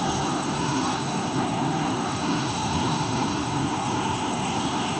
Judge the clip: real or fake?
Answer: fake